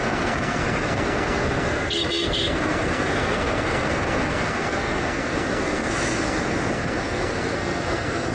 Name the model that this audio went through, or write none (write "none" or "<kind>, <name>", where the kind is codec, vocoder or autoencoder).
codec, SNAC